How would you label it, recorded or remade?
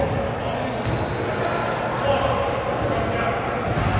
recorded